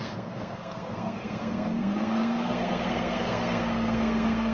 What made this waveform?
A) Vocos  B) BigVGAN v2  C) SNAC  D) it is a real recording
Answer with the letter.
C